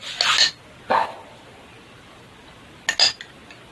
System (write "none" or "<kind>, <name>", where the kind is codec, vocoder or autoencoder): none